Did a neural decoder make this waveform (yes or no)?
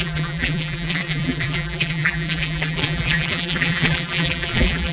yes